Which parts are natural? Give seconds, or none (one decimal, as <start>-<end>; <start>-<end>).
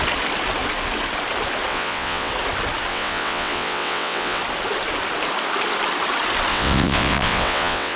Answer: 0.0-1.7; 2.3-2.9; 4.4-6.5